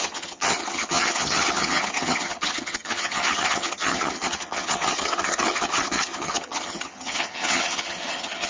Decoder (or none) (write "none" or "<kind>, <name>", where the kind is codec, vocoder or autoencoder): vocoder, HiFi-GAN